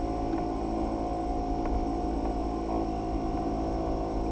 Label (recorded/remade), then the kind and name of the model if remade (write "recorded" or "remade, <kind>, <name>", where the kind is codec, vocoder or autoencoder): recorded